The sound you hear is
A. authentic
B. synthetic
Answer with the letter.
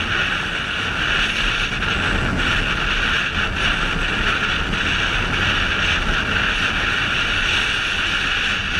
A